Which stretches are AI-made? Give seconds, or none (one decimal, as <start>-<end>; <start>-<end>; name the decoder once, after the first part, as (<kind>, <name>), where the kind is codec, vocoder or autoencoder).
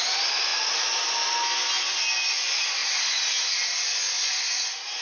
none